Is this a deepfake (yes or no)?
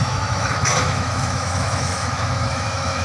yes